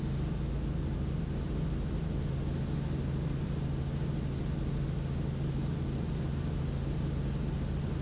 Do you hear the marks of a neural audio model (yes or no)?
no